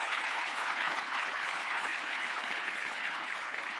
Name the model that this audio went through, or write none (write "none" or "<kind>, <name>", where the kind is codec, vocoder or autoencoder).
codec, HILCodec